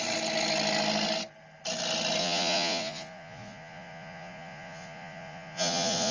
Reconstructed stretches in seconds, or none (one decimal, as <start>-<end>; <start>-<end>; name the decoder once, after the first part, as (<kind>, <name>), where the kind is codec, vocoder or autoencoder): 2.2-6.1 (vocoder, Vocos)